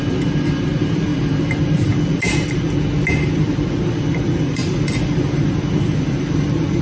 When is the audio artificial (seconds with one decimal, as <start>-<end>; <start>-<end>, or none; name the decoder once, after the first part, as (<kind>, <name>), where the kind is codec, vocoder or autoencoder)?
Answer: 0.0-1.1 (vocoder, BigVGAN v2); 3.4-4.6

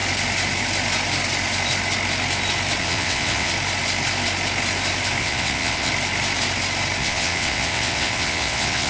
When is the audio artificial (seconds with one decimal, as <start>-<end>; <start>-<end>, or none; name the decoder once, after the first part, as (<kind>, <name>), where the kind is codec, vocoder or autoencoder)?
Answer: 2.8-3.5 (vocoder, WaveNeXt); 5.2-5.9; 7.0-8.9

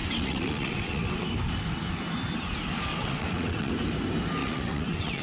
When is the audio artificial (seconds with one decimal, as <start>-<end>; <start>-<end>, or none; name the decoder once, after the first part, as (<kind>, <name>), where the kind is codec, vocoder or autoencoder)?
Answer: 0.0-1.2 (vocoder, WaveNeXt); 2.9-3.7; 4.4-5.2